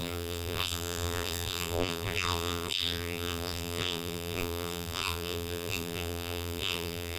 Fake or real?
fake